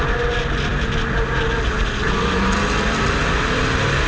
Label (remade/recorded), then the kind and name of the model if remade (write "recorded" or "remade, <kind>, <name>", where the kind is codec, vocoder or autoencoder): recorded